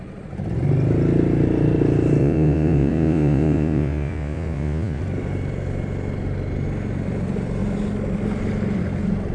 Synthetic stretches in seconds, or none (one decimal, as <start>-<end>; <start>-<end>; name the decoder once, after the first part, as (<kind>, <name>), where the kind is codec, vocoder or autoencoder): 2.2-5.0 (vocoder, Vocos)